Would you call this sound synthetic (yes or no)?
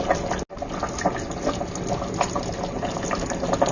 no